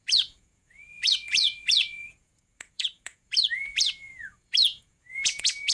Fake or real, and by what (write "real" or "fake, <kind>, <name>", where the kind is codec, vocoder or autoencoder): fake, vocoder, Vocos